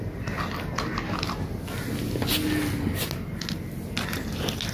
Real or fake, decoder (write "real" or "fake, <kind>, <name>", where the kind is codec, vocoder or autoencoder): real